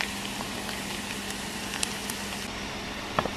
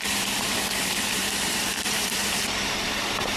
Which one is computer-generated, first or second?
second